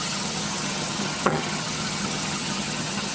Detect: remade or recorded remade